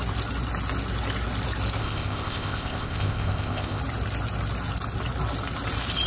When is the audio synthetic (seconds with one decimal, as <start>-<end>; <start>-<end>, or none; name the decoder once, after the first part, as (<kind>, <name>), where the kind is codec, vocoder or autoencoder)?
1.8-3.8 (codec, ZipCodec)

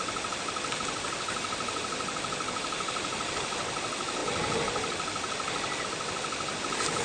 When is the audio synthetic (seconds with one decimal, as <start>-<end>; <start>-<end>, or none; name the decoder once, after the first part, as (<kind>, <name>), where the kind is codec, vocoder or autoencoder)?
none

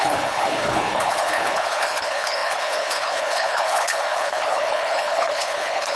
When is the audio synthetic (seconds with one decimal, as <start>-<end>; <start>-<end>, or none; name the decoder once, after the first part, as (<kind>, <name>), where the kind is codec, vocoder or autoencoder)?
0.0-6.0 (codec, HILCodec)

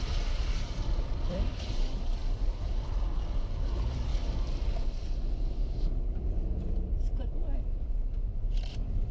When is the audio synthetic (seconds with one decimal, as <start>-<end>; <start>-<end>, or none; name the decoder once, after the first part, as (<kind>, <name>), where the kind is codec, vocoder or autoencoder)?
0.0-4.1 (vocoder, BigVGAN v2); 6.6-9.1

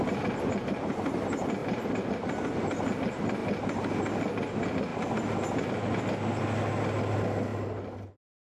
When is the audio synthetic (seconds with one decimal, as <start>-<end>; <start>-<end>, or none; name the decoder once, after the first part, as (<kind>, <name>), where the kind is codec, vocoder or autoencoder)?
1.6-2.1 (vocoder, BigVGAN v2); 3.4-3.9; 4.9-5.7

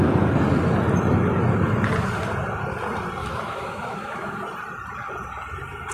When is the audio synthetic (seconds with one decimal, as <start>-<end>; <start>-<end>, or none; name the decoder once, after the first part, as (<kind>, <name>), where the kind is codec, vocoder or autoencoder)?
3.2-4.4 (autoencoder, DAC-VAE)